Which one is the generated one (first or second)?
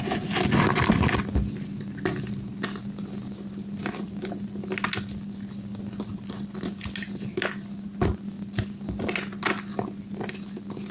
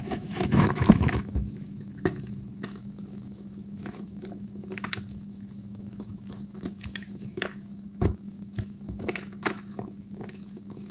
second